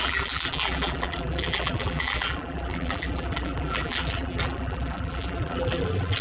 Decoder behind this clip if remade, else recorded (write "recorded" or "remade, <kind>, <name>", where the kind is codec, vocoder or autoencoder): remade, vocoder, BigVGAN v2